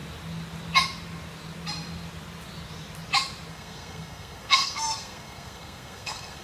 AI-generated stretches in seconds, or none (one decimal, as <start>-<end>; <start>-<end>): 3.5-6.4